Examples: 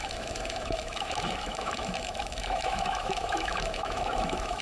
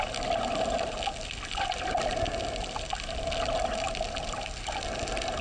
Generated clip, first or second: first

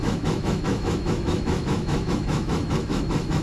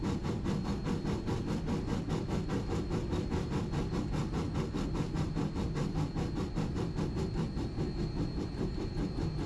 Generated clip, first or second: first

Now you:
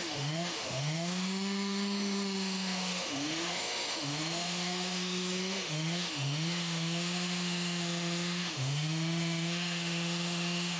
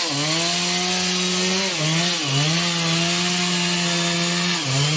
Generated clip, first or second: first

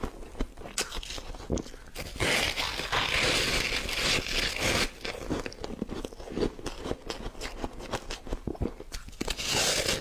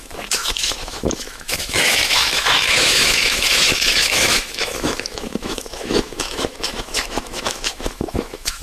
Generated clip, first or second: second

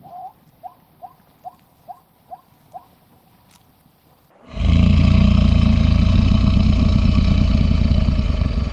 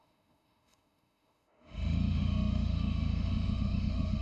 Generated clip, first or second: second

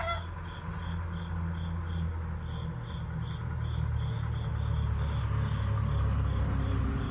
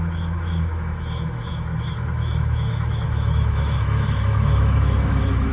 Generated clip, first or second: second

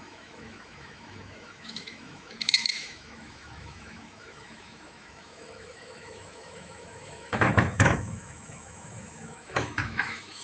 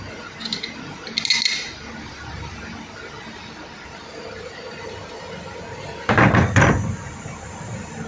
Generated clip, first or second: first